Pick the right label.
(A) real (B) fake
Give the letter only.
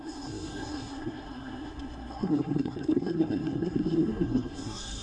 B